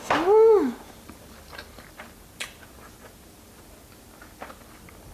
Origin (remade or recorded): recorded